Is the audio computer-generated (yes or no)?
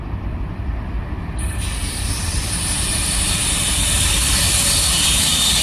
no